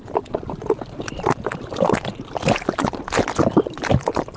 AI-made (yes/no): no